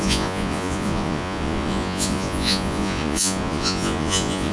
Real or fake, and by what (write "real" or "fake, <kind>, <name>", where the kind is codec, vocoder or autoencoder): fake, vocoder, Vocos